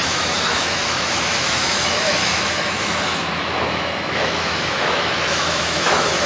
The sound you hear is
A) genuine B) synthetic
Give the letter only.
B